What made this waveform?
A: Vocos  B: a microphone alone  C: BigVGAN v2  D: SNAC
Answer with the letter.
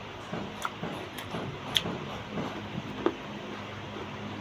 B